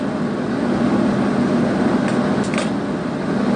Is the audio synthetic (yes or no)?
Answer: no